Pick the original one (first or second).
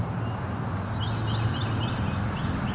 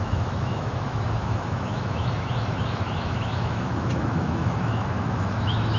first